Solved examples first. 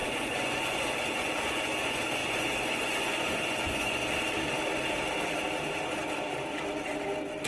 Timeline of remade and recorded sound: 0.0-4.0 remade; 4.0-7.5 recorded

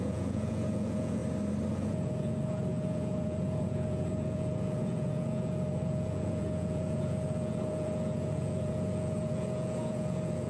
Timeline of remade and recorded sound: 0.0-1.2 remade; 1.2-1.7 recorded; 1.7-10.5 remade

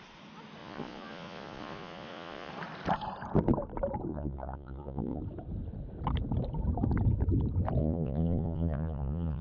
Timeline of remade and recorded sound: 0.0-0.6 recorded; 0.6-2.5 remade; 2.5-4.1 recorded; 4.1-5.2 remade; 5.2-7.8 recorded; 7.8-9.4 remade

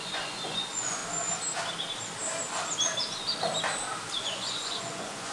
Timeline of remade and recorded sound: 0.0-1.0 remade; 1.0-4.2 recorded; 4.2-5.3 remade

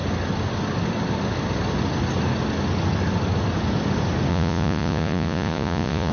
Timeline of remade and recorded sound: 0.0-4.3 recorded; 4.3-6.1 remade

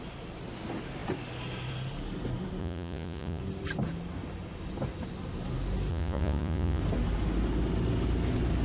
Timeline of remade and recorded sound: 0.0-2.6 recorded; 2.6-3.4 remade; 3.4-5.9 recorded; 5.9-6.8 remade; 6.8-8.6 recorded

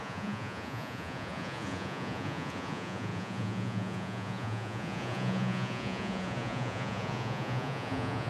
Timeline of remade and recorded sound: 0.0-8.3 remade